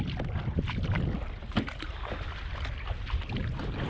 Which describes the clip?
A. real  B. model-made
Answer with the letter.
A